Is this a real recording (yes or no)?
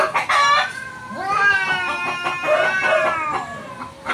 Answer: yes